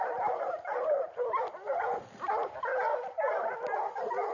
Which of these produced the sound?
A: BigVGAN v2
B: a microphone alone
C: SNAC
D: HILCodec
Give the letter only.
A